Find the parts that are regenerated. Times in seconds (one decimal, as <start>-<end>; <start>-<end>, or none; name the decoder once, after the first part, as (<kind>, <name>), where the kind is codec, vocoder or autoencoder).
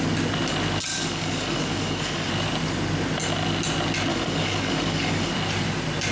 0.9-2.3 (codec, DAC); 4.1-5.3